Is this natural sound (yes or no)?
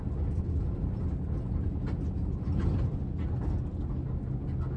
yes